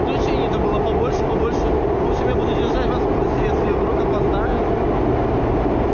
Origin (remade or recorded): recorded